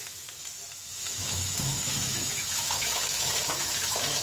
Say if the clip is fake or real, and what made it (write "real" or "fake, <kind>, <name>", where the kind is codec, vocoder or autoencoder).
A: fake, autoencoder, DAC-VAE